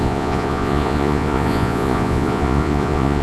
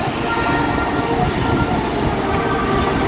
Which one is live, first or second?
second